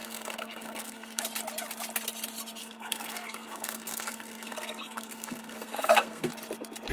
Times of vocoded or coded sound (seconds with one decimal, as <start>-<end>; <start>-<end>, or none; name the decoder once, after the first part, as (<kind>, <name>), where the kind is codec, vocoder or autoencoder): 0.0-1.2 (codec, SNAC); 2.6-6.3